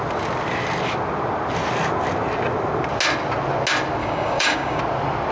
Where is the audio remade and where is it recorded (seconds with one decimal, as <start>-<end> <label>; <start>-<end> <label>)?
0.0-4.0 recorded; 4.0-4.8 remade; 4.8-5.3 recorded

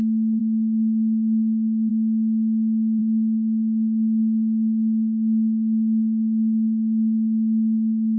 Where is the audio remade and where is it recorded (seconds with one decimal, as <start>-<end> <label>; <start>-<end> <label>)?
0.0-0.4 recorded; 0.4-1.9 remade; 1.9-3.0 recorded; 3.0-8.2 remade

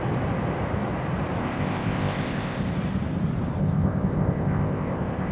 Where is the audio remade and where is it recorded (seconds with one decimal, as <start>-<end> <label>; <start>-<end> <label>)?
0.0-1.4 recorded; 1.4-2.7 remade; 2.7-3.6 recorded; 3.6-5.3 remade

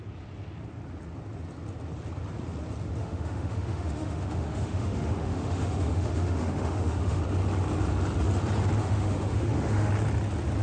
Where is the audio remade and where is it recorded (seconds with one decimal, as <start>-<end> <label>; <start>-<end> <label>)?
0.0-3.0 recorded; 3.0-7.2 remade; 7.2-8.8 recorded; 8.8-9.9 remade; 9.9-10.6 recorded

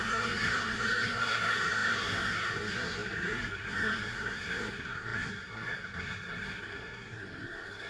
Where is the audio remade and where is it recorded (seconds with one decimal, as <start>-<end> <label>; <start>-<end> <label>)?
0.0-7.9 remade

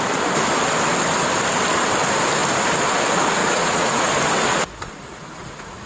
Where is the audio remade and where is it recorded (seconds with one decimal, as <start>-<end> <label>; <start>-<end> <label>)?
0.0-3.4 recorded; 3.4-4.1 remade; 4.1-4.5 recorded; 4.5-5.9 remade

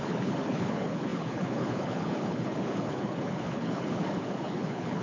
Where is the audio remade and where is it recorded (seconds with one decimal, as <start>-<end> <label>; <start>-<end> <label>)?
0.0-5.0 remade